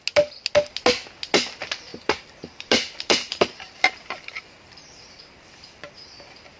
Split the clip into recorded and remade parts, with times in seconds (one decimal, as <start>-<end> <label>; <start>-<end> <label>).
0.0-1.9 recorded; 1.9-5.9 remade; 5.9-6.6 recorded